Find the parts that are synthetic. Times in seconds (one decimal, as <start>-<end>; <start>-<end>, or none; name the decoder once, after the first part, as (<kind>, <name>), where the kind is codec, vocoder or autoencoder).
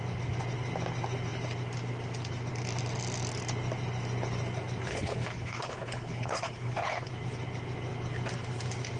4.9-7.1 (codec, HILCodec)